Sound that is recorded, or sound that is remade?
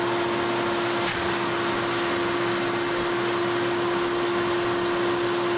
recorded